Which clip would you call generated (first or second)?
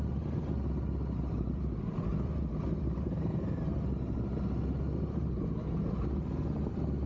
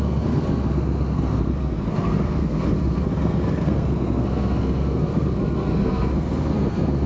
second